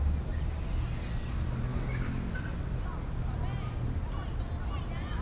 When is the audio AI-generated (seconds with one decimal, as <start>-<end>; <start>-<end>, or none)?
none